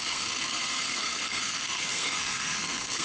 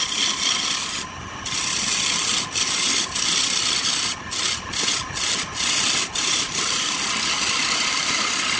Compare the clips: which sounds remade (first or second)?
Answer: first